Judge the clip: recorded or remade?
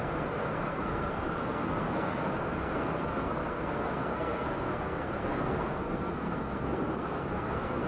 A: remade